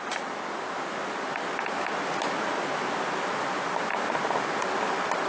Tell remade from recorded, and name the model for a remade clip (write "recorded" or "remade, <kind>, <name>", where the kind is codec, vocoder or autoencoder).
recorded